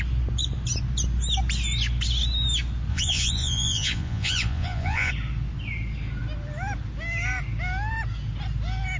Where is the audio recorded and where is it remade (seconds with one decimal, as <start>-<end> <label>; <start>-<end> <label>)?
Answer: 0.0-2.9 recorded; 2.9-5.1 remade; 5.1-9.0 recorded